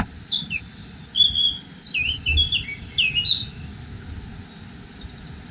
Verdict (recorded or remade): recorded